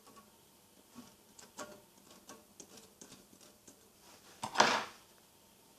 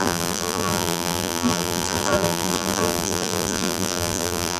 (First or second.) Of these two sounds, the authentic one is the first